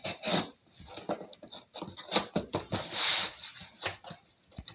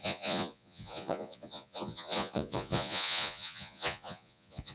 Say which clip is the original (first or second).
first